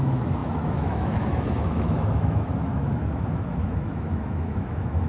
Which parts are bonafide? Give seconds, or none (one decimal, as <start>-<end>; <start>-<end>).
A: none